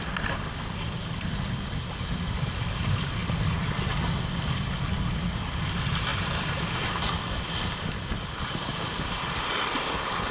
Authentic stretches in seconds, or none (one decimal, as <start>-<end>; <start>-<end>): 0.0-10.3